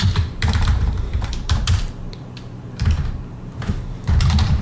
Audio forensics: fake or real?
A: fake